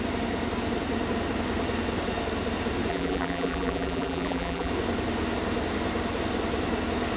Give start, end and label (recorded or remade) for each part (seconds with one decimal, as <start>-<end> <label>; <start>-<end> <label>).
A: 0.0-2.9 recorded; 2.9-4.7 remade; 4.7-7.2 recorded